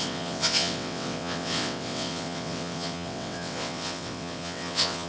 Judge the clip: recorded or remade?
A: remade